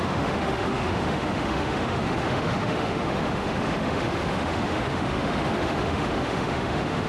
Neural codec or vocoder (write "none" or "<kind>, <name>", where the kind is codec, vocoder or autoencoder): autoencoder, DAC-VAE